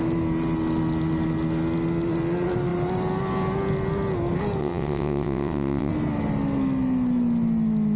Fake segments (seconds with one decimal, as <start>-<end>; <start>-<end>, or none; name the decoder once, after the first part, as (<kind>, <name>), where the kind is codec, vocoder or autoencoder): 4.6-5.9 (vocoder, WaveNeXt)